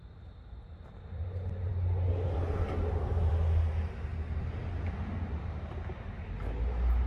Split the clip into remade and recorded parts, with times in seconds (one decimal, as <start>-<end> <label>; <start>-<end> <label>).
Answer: 0.0-7.1 recorded